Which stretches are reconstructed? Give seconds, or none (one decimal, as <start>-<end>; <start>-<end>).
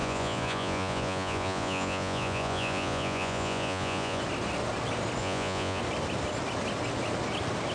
0.0-4.2; 5.2-5.8